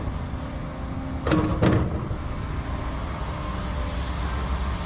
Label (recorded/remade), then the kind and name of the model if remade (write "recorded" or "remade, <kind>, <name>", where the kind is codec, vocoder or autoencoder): recorded